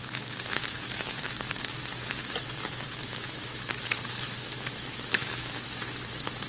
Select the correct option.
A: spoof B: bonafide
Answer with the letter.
A